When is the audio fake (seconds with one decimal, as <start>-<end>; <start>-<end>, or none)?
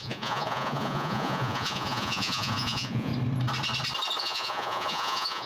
0.0-3.1; 4.2-5.5